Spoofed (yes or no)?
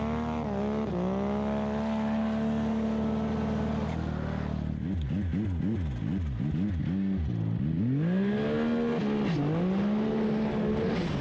no